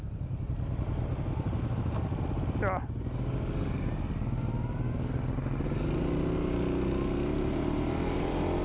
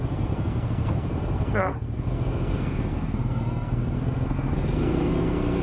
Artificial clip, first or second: second